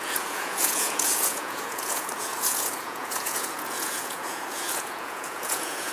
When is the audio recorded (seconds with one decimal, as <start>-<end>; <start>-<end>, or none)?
none